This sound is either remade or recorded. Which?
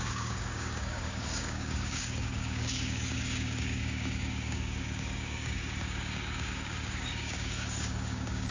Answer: remade